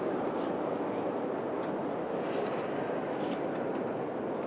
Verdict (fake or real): real